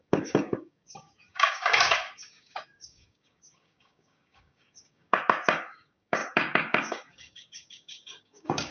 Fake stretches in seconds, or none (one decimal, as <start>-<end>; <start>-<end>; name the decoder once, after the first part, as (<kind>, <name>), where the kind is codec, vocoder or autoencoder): 0.0-8.7 (codec, DAC)